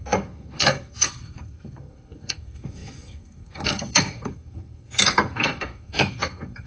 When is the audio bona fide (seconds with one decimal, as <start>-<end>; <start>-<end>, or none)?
none